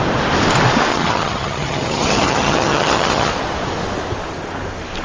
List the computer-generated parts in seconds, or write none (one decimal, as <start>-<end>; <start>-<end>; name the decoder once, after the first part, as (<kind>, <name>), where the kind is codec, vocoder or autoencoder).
0.9-3.3 (vocoder, HiFi-GAN)